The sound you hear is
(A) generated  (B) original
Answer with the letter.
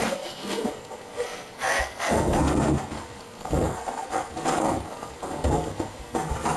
A